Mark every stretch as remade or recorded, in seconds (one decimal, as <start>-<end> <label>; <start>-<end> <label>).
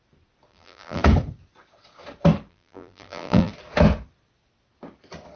0.0-0.5 recorded; 0.5-1.0 remade; 1.0-2.5 recorded; 2.5-3.5 remade; 3.5-5.4 recorded